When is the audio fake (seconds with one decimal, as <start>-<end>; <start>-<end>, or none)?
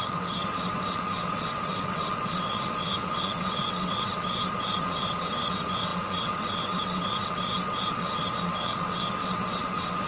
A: 0.0-10.1